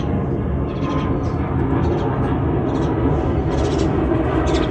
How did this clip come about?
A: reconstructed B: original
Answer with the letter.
B